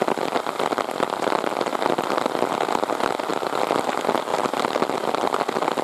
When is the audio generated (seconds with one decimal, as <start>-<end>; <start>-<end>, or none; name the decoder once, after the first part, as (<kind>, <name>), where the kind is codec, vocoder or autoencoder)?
3.3-3.9 (vocoder, BigVGAN v2); 4.3-5.0